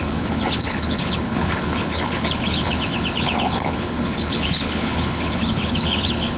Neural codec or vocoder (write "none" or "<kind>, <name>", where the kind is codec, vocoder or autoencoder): codec, HILCodec